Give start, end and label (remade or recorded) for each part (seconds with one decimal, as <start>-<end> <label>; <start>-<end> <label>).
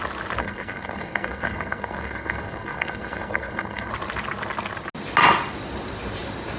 0.0-0.4 recorded; 0.4-3.9 remade; 3.9-6.6 recorded